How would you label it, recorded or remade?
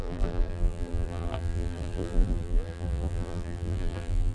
remade